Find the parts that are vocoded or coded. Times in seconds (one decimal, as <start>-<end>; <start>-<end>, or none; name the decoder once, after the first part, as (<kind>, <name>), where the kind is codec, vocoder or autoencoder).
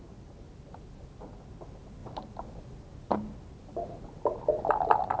none